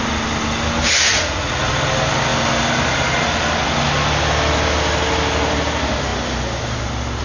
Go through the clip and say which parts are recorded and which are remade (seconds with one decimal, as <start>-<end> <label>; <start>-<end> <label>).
0.0-1.1 recorded; 1.1-1.6 remade; 1.6-7.2 recorded